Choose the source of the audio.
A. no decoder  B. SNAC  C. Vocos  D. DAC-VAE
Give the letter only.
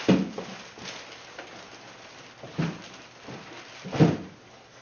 A